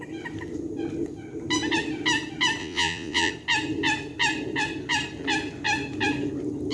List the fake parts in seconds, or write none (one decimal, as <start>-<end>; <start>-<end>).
2.6-3.3